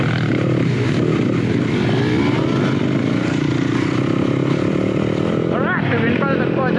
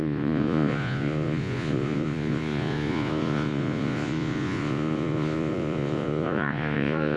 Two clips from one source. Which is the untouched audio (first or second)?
first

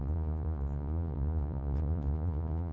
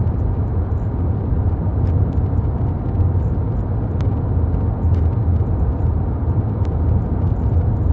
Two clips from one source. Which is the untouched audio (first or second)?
second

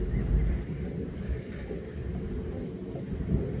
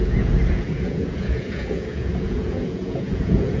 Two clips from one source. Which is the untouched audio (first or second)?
first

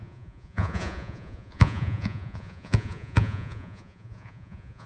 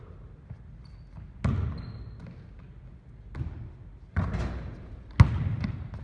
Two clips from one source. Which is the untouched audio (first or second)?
second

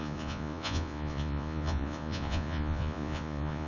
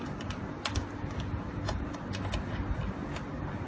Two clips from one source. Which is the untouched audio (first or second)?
second